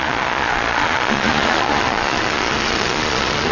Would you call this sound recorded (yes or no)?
no